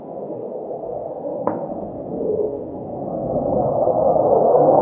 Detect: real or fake fake